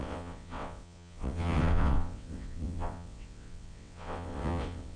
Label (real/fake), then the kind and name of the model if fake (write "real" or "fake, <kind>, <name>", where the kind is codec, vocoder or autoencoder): fake, vocoder, WaveNeXt